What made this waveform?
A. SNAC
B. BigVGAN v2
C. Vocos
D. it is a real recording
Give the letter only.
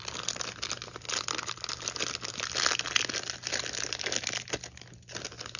D